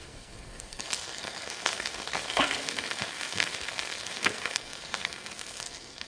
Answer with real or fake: fake